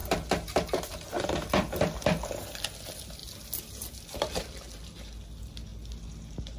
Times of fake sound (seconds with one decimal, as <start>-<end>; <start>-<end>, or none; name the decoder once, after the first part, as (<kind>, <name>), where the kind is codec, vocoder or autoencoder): 0.0-2.6 (vocoder, BigVGAN v2)